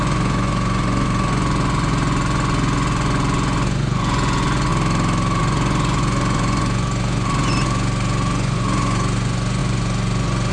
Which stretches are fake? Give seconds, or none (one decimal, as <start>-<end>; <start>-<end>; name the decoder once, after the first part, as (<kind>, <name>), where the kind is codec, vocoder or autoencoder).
0.0-4.7 (vocoder, Vocos); 5.4-10.5